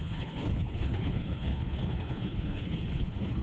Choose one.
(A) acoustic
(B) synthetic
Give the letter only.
B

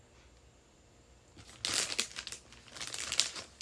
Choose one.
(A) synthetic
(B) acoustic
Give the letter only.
B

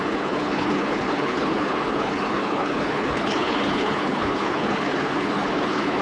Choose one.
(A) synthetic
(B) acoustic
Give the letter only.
A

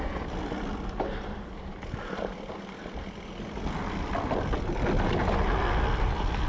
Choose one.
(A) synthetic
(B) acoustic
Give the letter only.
B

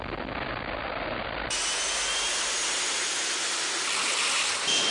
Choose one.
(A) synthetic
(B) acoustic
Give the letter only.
B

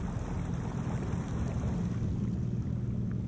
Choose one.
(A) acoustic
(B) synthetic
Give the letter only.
A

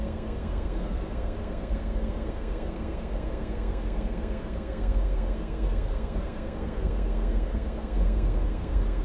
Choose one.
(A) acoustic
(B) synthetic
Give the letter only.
B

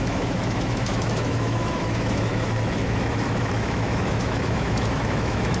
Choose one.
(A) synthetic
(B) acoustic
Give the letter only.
A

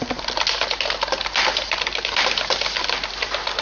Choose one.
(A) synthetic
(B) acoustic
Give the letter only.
B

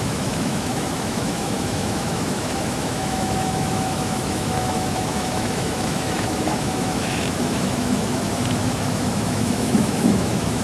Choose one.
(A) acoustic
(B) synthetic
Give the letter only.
B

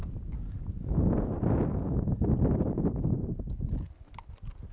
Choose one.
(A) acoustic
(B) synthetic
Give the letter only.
A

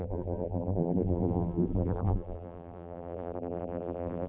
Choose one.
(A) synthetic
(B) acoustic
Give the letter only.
A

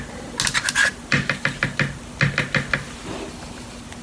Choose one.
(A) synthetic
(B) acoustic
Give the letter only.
B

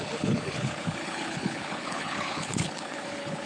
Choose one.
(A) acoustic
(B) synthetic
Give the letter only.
B